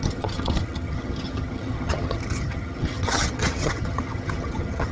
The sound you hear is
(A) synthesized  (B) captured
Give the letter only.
A